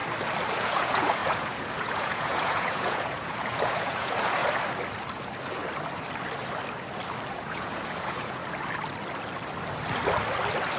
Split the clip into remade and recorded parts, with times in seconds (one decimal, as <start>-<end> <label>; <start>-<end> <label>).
0.0-0.5 recorded; 0.5-4.4 remade; 4.4-7.3 recorded; 7.3-8.4 remade; 8.4-10.8 recorded